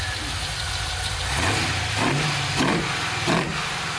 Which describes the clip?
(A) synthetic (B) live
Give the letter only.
B